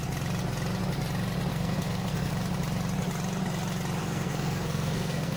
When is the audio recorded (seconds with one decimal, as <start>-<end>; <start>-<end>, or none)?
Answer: 0.0-1.5; 2.3-4.0